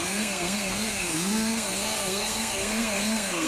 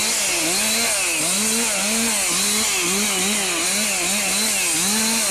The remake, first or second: first